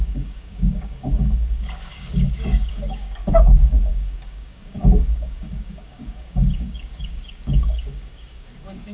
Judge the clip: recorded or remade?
remade